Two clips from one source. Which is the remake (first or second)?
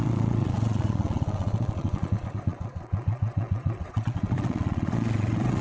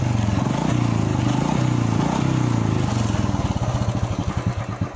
first